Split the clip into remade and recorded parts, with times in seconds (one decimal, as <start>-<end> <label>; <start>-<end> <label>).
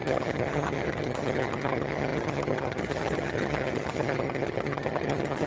0.0-5.5 remade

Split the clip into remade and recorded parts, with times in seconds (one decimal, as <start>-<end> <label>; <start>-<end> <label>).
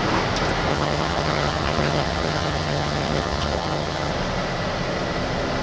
0.0-0.7 recorded; 0.7-4.1 remade; 4.1-5.6 recorded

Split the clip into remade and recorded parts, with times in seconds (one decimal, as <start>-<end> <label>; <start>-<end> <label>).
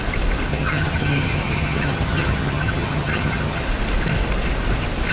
0.0-0.5 recorded; 0.5-3.6 remade; 3.6-5.1 recorded